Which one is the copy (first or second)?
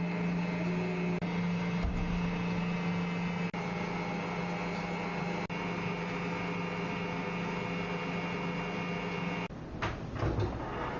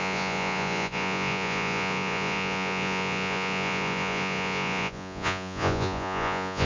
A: second